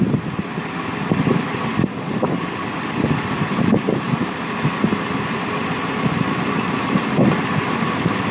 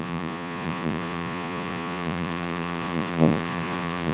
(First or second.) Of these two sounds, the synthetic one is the second